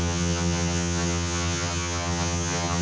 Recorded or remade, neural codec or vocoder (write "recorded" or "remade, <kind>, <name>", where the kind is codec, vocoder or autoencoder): remade, vocoder, HiFi-GAN